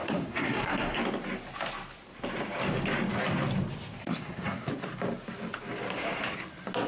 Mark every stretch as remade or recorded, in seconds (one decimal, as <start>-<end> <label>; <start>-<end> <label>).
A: 0.0-1.0 remade; 1.0-4.0 recorded; 4.0-4.7 remade; 4.7-6.9 recorded